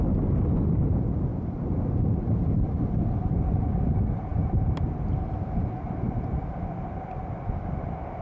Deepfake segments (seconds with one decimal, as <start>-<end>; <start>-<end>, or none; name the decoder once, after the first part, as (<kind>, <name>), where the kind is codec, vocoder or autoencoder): 1.3-2.7 (vocoder, BigVGAN v2)